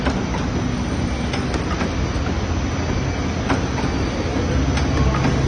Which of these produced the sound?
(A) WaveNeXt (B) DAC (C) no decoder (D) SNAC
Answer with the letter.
C